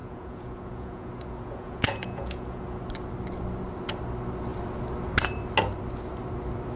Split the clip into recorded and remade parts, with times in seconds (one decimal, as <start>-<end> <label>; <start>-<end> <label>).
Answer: 0.0-2.8 remade; 2.8-6.8 recorded